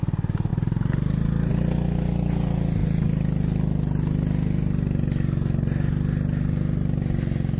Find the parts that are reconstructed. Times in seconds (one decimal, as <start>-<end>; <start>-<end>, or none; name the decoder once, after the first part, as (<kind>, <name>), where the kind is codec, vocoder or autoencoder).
none